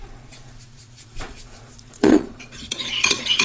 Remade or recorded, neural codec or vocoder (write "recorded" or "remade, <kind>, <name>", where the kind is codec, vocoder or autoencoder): remade, vocoder, Vocos